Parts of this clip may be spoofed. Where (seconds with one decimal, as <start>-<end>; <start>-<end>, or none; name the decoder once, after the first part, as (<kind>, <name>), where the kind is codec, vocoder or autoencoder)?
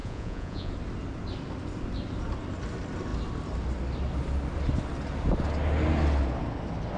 0.0-0.7 (vocoder, Vocos)